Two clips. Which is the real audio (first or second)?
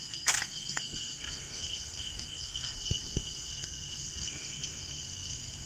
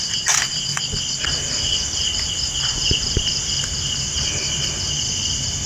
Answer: second